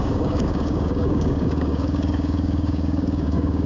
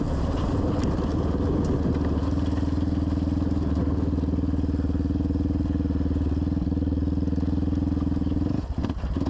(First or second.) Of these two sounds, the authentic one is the second